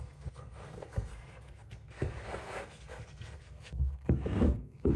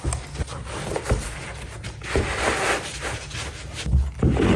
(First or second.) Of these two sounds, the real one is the second